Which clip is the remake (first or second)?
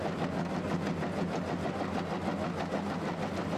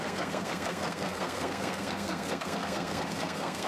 second